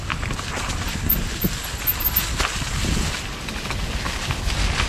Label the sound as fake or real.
real